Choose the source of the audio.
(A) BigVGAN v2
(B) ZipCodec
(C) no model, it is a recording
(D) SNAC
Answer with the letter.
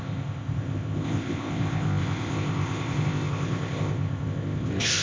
B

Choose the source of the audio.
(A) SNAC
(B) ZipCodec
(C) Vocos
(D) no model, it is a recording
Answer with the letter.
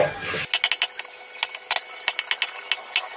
D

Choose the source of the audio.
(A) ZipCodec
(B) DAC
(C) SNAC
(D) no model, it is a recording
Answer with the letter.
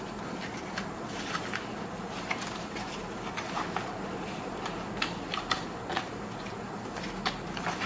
D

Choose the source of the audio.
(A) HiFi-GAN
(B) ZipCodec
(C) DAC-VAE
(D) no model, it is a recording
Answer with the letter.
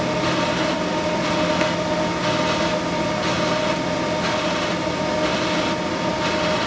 D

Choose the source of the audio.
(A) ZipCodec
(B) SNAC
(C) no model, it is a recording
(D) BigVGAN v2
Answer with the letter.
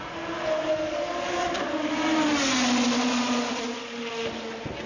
C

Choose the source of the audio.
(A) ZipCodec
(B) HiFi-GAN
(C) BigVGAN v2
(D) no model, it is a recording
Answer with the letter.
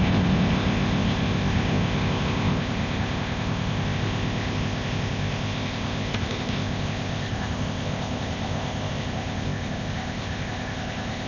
A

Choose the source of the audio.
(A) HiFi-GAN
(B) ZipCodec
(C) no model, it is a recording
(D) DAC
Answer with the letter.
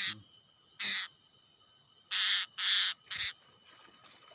C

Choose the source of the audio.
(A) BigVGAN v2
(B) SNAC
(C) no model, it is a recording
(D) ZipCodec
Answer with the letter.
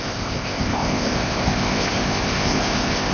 D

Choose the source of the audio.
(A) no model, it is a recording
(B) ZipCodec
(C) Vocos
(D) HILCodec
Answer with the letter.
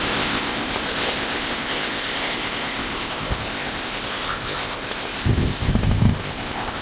B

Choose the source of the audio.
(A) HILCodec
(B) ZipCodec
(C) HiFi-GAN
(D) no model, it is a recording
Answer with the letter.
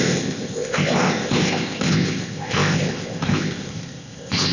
B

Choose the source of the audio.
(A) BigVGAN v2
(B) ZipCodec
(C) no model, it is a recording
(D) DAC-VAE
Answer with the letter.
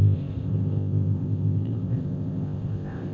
B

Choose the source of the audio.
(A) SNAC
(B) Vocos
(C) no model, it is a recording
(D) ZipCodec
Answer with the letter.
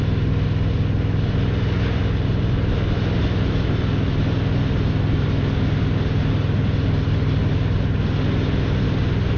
C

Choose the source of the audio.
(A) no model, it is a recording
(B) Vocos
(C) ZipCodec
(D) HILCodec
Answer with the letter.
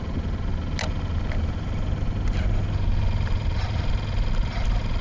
A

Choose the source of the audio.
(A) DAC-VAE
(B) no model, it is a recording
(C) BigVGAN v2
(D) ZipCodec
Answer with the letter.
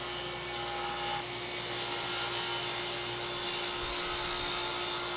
B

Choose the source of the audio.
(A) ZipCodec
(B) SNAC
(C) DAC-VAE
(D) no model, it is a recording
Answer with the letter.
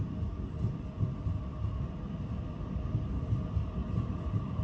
D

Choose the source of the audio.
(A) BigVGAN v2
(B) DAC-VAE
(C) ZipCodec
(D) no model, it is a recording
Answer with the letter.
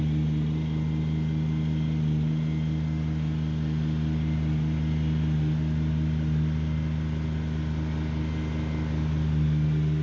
D